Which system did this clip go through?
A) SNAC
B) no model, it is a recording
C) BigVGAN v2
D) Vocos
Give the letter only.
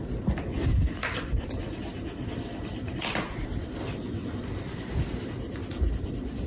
C